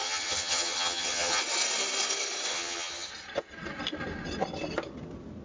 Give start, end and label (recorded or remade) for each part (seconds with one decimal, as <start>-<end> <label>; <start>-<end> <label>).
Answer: 0.0-1.4 remade; 1.4-2.5 recorded; 2.5-3.1 remade; 3.1-5.4 recorded